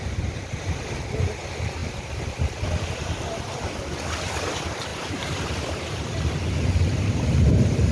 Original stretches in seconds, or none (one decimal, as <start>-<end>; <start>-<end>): 0.0-4.9; 6.0-7.9